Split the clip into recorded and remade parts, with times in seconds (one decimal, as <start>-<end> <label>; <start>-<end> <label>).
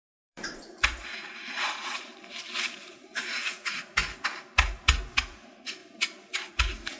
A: 0.0-2.1 remade; 2.1-2.7 recorded; 2.7-4.0 remade; 4.0-5.3 recorded; 5.3-5.8 remade; 5.8-6.5 recorded; 6.5-7.0 remade